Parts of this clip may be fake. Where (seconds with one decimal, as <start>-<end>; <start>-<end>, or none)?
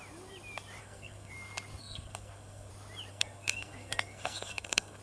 0.8-1.3; 1.8-2.7; 3.1-5.0